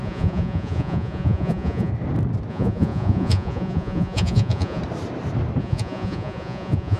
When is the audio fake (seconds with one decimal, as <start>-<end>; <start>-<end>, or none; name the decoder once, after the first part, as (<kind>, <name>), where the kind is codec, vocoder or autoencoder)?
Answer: 0.0-1.9 (vocoder, Vocos); 2.5-4.8; 5.6-7.0